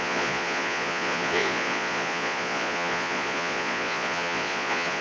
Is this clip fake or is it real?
fake